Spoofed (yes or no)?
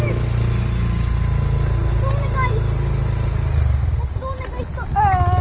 no